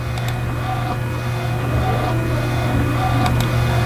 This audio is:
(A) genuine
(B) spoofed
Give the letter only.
A